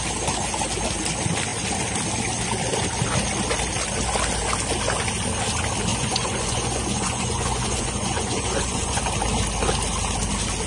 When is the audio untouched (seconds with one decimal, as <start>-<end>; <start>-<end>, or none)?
0.0-5.9; 9.0-10.7